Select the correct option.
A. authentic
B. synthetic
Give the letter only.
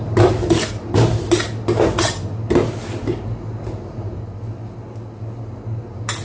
A